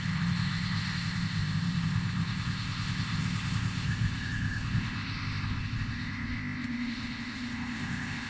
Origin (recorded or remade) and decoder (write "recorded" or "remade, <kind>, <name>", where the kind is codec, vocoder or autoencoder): remade, codec, ZipCodec